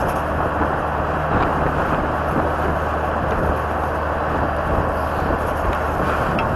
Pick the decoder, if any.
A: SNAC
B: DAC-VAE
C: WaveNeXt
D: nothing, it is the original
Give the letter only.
D